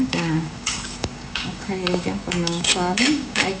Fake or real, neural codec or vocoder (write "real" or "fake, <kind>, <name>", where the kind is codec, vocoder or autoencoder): fake, codec, DAC